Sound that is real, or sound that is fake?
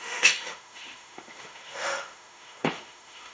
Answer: fake